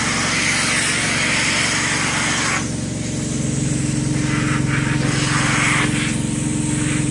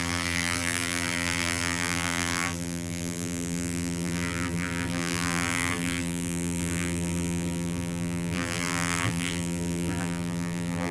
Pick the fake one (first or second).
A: second